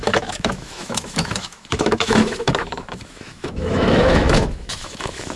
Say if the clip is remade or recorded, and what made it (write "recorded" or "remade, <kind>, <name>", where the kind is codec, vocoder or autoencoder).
remade, autoencoder, DAC-VAE